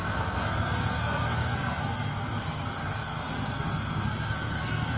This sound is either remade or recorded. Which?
remade